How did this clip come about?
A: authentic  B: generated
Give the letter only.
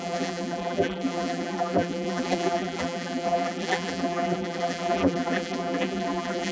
B